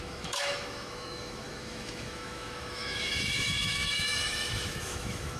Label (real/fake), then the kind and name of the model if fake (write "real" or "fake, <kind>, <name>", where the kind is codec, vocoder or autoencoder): fake, autoencoder, DAC-VAE